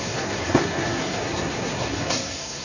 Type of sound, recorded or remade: remade